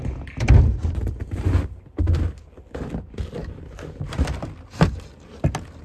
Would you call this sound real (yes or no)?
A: yes